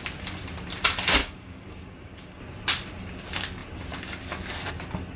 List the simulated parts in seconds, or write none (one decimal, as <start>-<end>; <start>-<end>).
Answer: 1.2-2.4